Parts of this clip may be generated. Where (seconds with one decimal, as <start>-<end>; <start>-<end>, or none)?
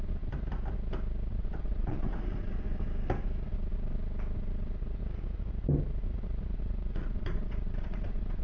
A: 1.4-2.5; 6.5-8.4